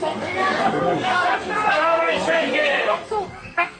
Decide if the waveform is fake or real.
fake